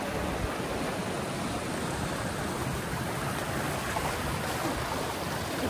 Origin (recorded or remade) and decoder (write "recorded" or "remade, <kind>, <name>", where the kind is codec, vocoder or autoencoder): recorded